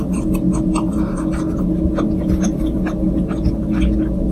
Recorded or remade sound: recorded